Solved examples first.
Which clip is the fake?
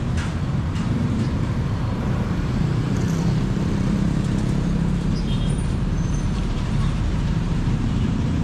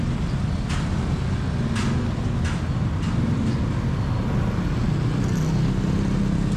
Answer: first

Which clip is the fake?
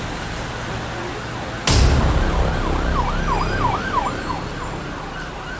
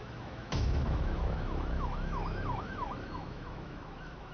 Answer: second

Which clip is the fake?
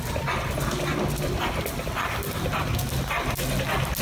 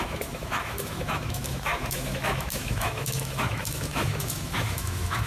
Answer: second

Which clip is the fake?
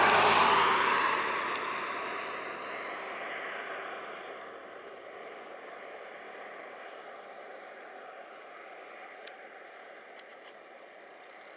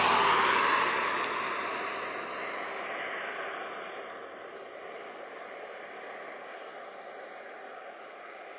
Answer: first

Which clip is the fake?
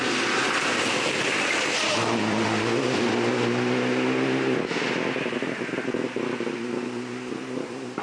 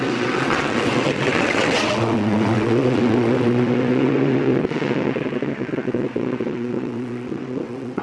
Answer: second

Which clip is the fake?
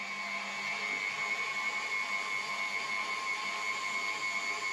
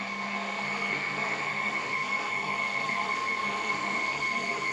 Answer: second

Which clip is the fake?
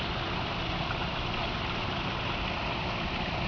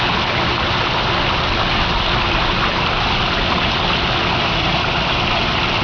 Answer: first